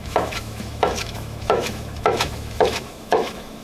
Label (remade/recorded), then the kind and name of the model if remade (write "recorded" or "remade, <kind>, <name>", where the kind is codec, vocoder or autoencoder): remade, autoencoder, DAC-VAE